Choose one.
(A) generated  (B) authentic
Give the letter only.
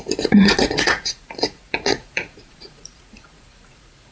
A